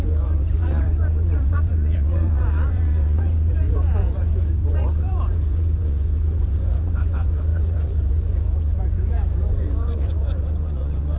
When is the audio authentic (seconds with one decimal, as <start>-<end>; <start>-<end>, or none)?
none